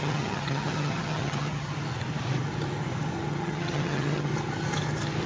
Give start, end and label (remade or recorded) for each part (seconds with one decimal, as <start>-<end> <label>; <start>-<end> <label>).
0.0-1.7 remade; 1.7-3.3 recorded; 3.3-4.3 remade; 4.3-5.3 recorded